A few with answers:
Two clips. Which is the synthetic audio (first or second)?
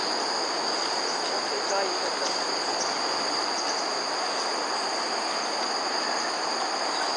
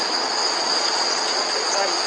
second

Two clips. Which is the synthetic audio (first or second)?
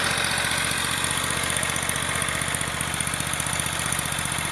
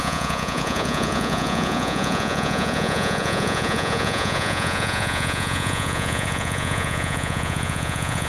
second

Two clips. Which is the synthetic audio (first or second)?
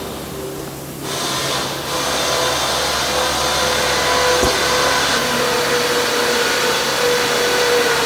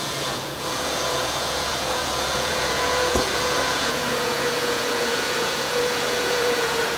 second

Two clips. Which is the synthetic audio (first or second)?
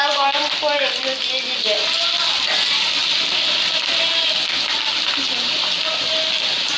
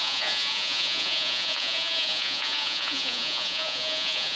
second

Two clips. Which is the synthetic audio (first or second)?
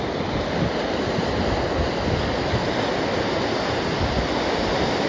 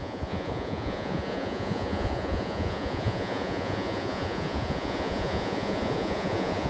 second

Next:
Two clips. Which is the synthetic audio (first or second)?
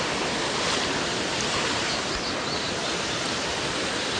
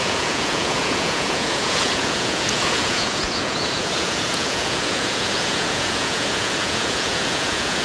second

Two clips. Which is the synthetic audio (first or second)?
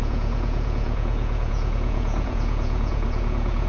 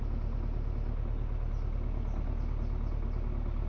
first